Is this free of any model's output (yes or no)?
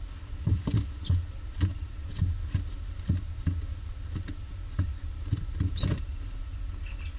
yes